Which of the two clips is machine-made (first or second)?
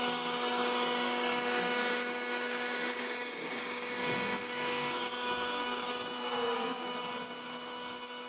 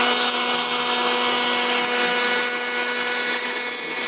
first